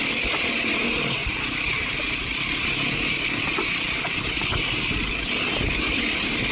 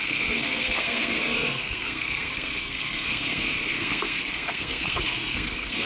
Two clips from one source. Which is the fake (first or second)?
second